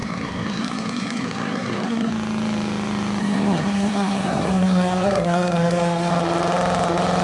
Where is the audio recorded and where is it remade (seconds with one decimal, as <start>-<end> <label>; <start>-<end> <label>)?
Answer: 0.0-2.1 remade; 2.1-3.2 recorded; 3.2-6.1 remade; 6.1-7.2 recorded